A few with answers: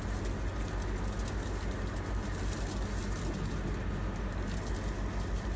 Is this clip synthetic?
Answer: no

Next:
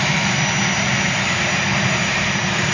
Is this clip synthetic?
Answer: no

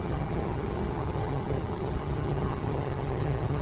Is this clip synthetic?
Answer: yes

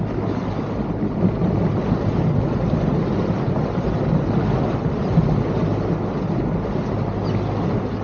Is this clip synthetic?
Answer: no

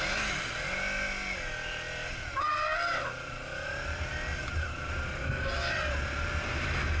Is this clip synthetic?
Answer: no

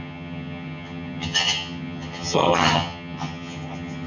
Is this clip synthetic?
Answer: yes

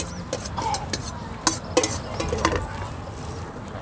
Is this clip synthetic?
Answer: no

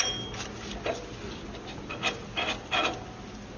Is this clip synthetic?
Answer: no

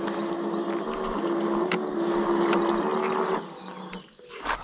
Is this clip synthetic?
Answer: no